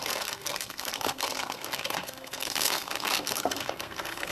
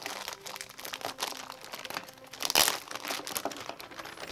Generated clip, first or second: first